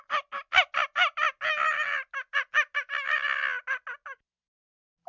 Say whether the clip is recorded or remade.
recorded